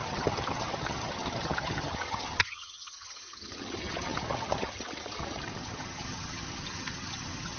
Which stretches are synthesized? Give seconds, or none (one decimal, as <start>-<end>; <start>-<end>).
0.0-7.6